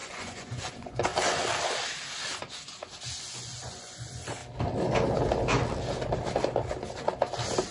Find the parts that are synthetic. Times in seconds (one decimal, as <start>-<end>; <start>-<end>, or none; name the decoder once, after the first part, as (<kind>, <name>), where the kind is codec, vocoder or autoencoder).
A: 0.0-1.1 (vocoder, Vocos); 3.2-4.4